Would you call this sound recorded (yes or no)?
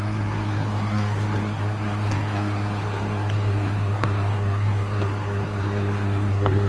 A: no